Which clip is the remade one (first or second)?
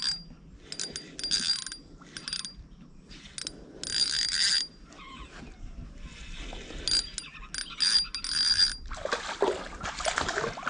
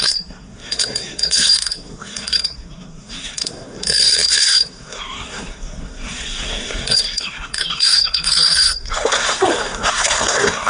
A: second